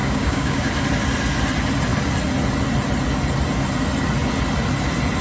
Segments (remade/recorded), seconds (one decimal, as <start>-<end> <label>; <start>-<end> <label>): 0.0-0.7 remade; 0.7-5.2 recorded